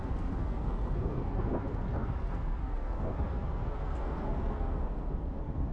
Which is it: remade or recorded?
remade